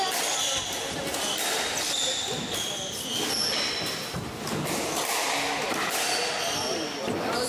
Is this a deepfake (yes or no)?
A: no